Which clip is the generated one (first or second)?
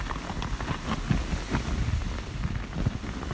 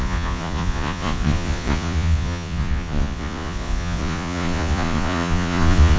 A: second